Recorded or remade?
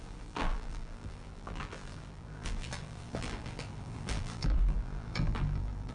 remade